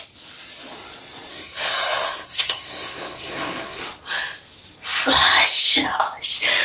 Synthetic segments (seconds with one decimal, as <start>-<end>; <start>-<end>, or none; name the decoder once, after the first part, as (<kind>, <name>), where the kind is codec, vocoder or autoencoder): 1.3-3.8 (codec, SNAC)

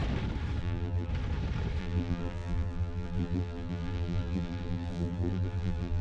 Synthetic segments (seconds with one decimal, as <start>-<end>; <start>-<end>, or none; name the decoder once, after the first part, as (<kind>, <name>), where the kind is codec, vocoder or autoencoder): 0.6-1.1 (vocoder, BigVGAN v2); 1.8-6.0

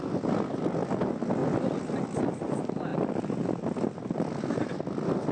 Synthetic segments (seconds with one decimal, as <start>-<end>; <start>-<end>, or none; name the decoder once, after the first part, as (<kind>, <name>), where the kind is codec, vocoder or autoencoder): none

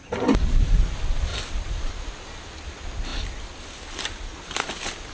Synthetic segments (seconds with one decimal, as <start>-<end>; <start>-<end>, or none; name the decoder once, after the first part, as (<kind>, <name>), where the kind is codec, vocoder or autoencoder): none

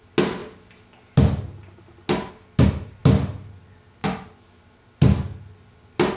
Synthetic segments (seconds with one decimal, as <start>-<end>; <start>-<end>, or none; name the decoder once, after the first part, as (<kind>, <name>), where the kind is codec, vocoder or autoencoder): none

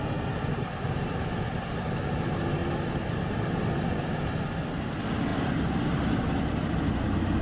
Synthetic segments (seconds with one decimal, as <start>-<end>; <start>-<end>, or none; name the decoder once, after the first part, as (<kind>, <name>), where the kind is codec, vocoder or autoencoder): none

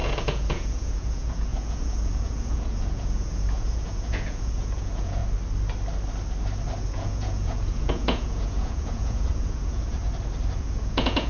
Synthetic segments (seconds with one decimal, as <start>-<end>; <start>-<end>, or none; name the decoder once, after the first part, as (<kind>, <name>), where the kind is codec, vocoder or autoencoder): 0.0-5.2 (vocoder, Vocos); 6.8-10.0; 10.6-11.3

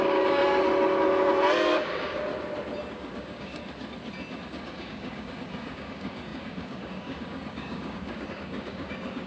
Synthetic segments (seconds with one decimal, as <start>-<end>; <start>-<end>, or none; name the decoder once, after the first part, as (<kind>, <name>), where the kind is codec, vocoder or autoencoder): 0.0-0.4 (codec, DAC); 1.7-2.3; 2.9-3.6; 4.5-9.3